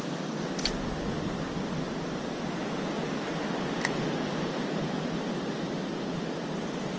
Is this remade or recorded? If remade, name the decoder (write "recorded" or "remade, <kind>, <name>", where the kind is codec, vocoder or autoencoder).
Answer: recorded